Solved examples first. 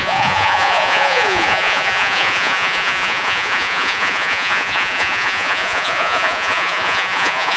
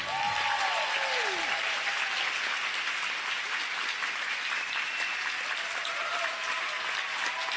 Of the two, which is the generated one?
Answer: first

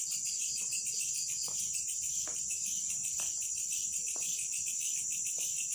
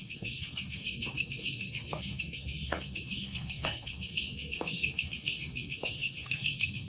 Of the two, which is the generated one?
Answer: second